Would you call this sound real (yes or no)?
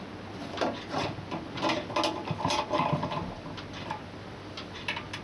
yes